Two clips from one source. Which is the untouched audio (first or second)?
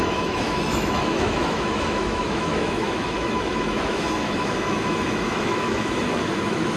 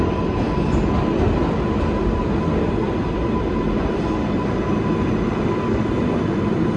second